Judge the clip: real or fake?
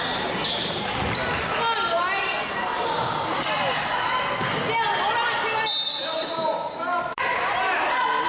real